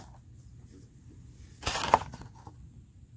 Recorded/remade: recorded